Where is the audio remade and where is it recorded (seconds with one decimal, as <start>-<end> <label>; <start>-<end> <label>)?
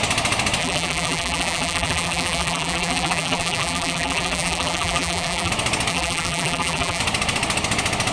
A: 0.0-0.6 recorded; 0.6-5.5 remade; 5.5-5.9 recorded; 5.9-7.0 remade; 7.0-8.1 recorded